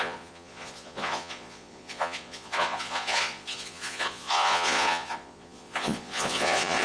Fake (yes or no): yes